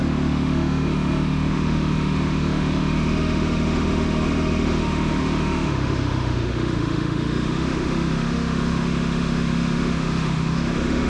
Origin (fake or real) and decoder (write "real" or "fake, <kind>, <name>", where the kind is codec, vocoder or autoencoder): fake, autoencoder, DAC-VAE